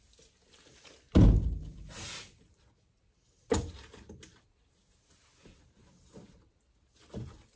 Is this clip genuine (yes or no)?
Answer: yes